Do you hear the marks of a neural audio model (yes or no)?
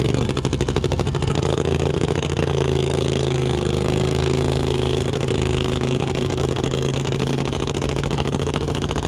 yes